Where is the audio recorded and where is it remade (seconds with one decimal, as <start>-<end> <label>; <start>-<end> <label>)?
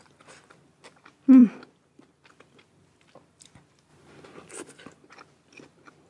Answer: 0.0-6.1 recorded